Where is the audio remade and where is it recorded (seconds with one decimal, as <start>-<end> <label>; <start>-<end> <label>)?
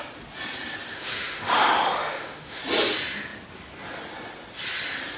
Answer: 0.0-0.9 recorded; 0.9-2.6 remade; 2.6-5.2 recorded